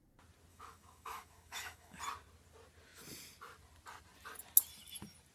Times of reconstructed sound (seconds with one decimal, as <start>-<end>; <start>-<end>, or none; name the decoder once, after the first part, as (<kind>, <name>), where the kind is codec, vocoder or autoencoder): 0.5-2.0 (autoencoder, DAC-VAE)